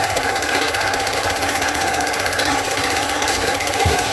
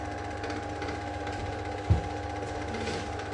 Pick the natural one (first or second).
second